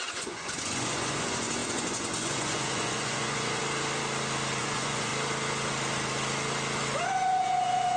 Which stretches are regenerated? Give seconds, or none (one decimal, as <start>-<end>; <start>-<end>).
0.0-3.6; 4.6-5.1; 7.0-8.0